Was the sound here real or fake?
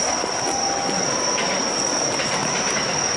real